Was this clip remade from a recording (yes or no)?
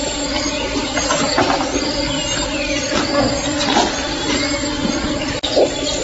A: no